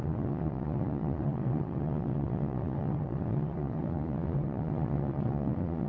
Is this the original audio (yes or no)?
no